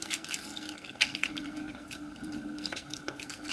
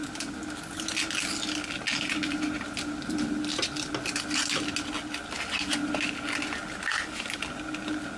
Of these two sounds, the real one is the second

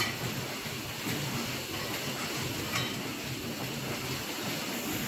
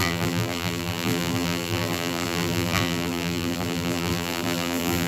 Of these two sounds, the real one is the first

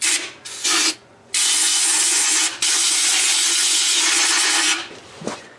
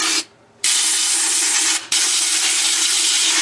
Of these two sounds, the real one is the second